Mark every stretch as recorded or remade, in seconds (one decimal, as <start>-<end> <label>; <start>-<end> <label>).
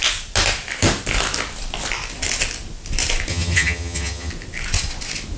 0.0-3.3 recorded; 3.3-4.3 remade; 4.3-5.4 recorded